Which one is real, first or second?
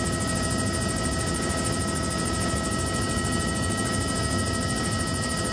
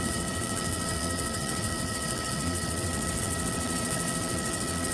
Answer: first